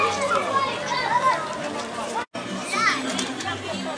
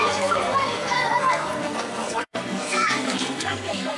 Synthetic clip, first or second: second